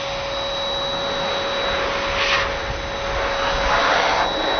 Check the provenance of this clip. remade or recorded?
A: recorded